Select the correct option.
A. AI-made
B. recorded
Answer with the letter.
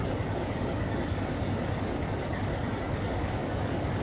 A